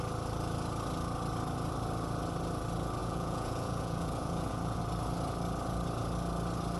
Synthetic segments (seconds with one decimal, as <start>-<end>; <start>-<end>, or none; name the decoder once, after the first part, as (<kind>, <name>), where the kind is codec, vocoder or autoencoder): 3.0-4.8 (vocoder, Vocos)